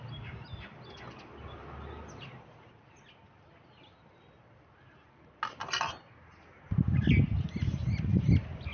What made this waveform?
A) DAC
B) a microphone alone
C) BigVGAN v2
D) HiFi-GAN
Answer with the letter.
B